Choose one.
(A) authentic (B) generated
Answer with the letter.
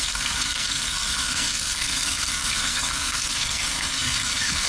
B